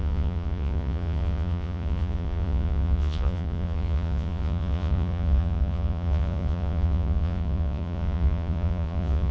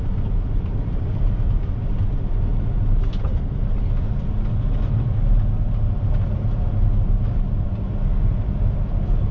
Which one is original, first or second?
second